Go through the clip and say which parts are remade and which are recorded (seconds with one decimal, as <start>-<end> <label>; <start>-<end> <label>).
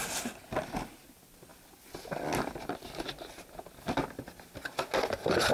0.0-5.5 recorded